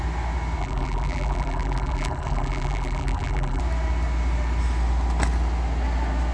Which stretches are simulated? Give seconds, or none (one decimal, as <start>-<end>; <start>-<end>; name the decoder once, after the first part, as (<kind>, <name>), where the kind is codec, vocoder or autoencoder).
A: 0.6-3.6 (vocoder, BigVGAN v2)